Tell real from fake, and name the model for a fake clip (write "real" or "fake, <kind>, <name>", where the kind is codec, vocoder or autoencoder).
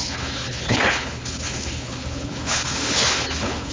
fake, codec, HILCodec